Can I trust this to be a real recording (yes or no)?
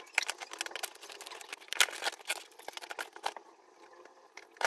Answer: yes